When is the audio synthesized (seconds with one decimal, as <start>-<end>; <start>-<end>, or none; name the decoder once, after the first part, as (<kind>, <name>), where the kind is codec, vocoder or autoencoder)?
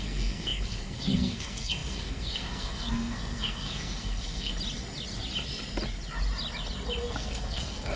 0.0-4.5 (codec, SNAC); 7.0-8.0